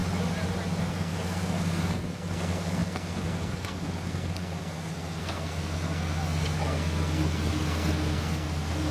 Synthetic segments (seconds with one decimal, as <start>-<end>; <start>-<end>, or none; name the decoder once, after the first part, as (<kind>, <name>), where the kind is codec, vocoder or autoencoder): 0.8-8.9 (codec, SNAC)